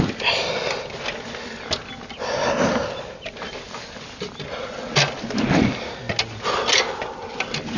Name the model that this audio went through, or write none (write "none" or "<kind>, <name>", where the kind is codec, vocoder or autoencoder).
none